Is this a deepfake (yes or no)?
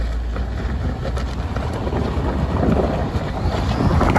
no